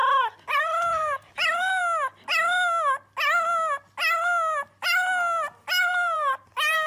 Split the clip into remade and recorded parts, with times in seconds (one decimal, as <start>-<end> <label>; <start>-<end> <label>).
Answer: 0.0-1.8 remade; 1.8-5.9 recorded; 5.9-6.9 remade